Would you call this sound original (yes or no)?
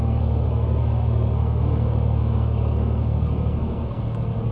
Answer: no